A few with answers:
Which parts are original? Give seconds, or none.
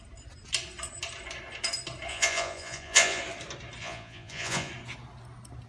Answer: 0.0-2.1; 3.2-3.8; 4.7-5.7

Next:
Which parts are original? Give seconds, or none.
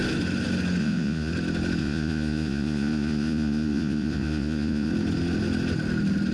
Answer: 0.0-0.8; 1.3-1.8; 4.9-6.3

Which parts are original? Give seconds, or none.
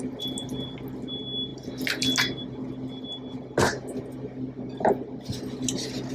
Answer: 0.0-6.1